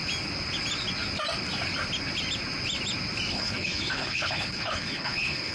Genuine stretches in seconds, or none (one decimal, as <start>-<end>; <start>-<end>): 0.0-3.3